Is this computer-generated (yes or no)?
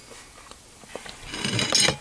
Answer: no